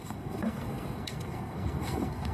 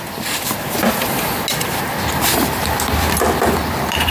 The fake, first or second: first